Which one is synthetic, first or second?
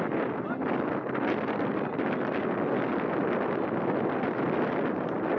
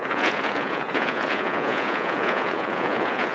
second